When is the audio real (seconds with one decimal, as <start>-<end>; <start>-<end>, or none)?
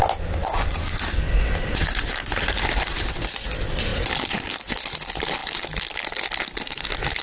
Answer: 0.0-0.4; 2.5-3.9; 4.8-5.4; 6.2-7.2